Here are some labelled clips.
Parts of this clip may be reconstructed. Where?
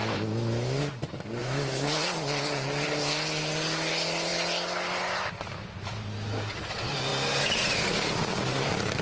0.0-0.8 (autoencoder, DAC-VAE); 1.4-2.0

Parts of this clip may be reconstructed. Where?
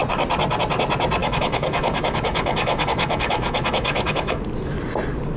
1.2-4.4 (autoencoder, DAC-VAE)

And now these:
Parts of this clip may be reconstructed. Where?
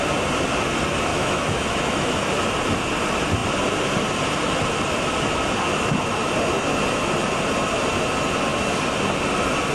1.1-2.3 (autoencoder, DAC-VAE)